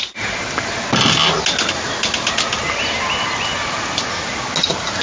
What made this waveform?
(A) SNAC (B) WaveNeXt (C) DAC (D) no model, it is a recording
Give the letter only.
D